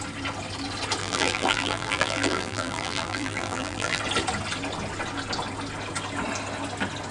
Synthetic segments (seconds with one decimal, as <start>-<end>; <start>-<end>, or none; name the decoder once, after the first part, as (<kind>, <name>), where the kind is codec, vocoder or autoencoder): 1.0-4.0 (vocoder, BigVGAN v2)